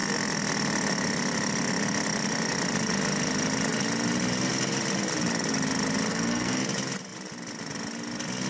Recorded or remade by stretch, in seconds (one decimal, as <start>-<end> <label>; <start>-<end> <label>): 0.0-6.1 recorded; 6.1-6.6 remade; 6.6-8.5 recorded

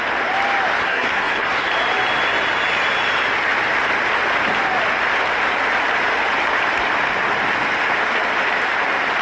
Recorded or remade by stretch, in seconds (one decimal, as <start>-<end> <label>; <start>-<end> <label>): 0.0-0.8 recorded; 0.8-1.7 remade; 1.7-9.2 recorded